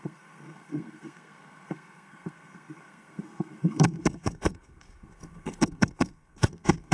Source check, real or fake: fake